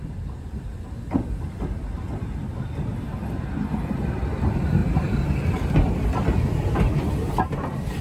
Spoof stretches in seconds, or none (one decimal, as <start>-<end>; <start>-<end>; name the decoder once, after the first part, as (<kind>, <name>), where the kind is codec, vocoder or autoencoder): none